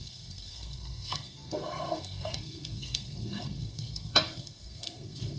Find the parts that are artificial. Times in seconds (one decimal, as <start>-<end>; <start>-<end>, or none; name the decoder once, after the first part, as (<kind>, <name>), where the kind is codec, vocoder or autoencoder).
0.0-5.4 (codec, SNAC)